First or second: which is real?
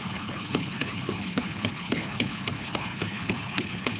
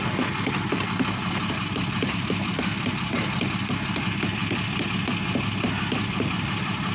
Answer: second